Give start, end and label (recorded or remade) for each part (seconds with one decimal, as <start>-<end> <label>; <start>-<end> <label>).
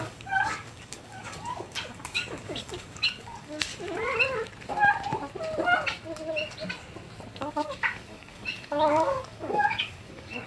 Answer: 0.0-3.7 remade; 3.7-7.3 recorded; 7.3-10.5 remade